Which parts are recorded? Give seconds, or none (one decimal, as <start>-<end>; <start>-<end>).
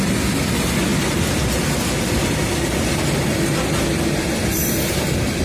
0.0-5.4